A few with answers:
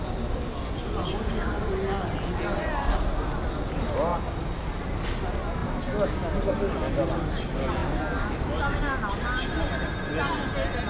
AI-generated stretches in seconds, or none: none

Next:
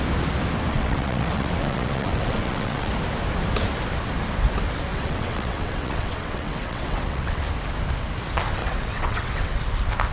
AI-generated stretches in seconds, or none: 0.7-2.9 (vocoder, WaveNeXt); 4.9-7.4; 8.6-9.6

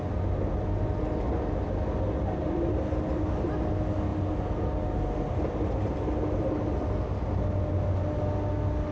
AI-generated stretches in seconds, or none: none

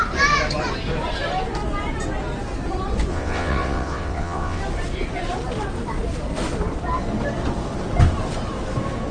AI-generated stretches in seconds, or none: 3.1-4.6 (vocoder, WaveNeXt)

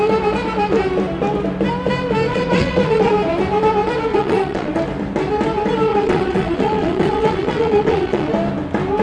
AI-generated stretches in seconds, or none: 2.3-3.1 (vocoder, WaveNeXt); 4.1-4.7; 5.9-8.3

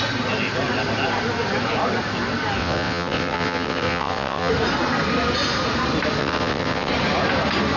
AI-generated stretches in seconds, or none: 2.6-4.5 (vocoder, WaveNeXt); 6.2-6.9

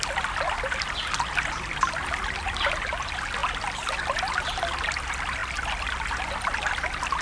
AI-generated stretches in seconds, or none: none

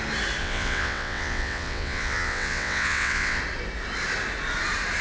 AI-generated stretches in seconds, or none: 0.4-3.4 (vocoder, WaveNeXt)